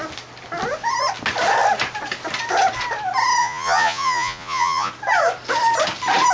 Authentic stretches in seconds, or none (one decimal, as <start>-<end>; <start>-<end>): 0.0-3.4; 4.9-6.3